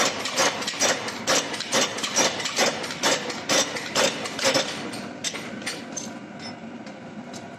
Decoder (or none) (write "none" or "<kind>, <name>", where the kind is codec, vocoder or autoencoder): none